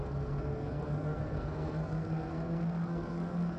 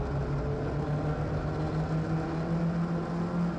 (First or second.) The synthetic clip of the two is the first